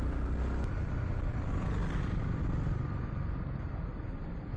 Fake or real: real